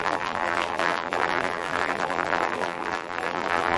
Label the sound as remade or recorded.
remade